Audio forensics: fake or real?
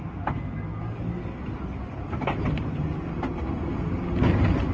real